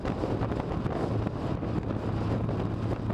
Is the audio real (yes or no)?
yes